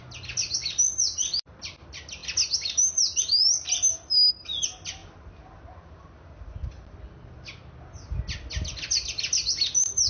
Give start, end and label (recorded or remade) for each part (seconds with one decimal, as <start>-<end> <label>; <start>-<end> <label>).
0.0-10.1 recorded